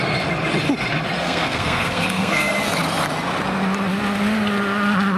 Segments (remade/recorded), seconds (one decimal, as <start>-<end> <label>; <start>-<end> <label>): 0.0-1.2 recorded; 1.2-2.5 remade; 2.5-5.2 recorded